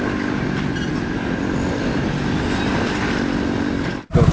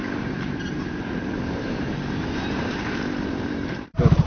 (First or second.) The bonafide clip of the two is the first